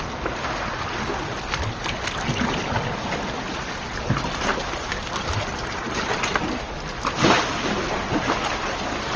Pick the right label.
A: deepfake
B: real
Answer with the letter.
B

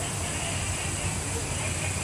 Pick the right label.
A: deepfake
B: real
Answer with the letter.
B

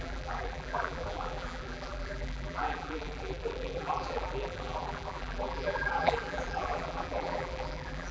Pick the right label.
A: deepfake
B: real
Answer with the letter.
A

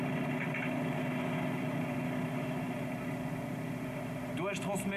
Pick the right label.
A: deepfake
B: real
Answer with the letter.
B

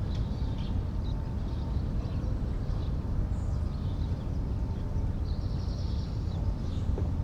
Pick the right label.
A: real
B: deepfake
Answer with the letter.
A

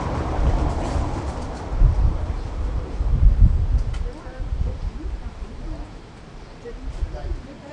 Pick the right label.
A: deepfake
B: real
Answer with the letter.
A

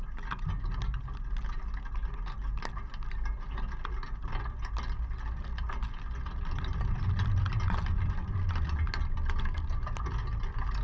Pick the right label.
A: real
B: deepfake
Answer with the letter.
A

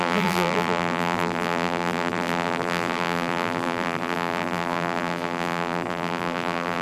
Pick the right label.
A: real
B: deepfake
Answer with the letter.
B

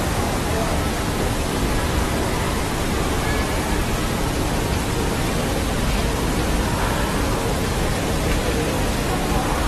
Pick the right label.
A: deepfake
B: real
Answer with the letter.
B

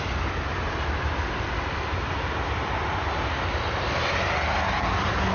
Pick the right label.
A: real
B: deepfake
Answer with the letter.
A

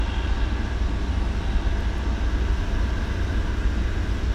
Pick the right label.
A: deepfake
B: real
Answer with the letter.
B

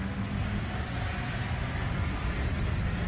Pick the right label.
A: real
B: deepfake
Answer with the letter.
A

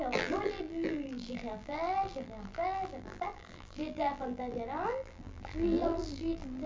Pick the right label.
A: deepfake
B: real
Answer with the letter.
A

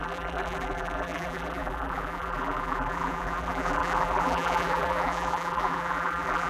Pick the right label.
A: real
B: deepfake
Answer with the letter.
B